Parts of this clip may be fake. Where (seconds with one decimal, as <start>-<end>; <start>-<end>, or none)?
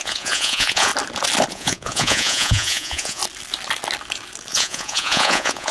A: 0.0-0.9; 1.5-3.2; 4.5-5.7